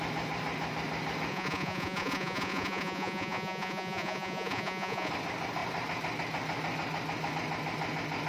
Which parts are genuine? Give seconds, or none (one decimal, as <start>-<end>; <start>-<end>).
0.0-1.3; 5.1-8.3